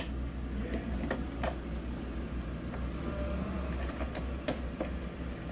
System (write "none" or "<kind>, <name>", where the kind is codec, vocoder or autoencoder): none